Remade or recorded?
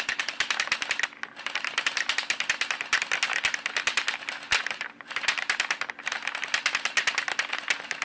recorded